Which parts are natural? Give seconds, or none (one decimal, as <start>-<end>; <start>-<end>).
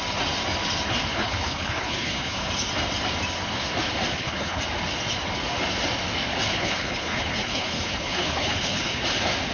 0.0-1.1; 2.5-4.1; 4.6-6.5; 9.0-9.5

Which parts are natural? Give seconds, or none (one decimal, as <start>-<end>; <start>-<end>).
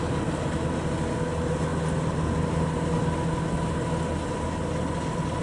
0.0-5.4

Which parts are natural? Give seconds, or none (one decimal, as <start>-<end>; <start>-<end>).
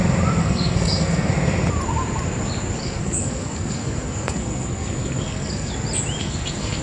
0.0-0.4; 1.3-2.8; 5.7-6.2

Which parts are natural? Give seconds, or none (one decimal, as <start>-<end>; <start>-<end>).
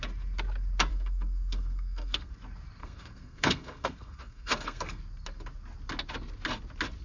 0.0-0.9; 2.3-2.8; 5.0-7.0